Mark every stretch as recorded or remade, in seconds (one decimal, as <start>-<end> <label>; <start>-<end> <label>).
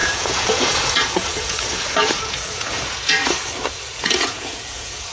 0.0-3.2 remade; 3.2-3.7 recorded; 3.7-5.1 remade